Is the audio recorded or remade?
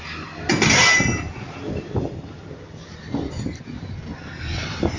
recorded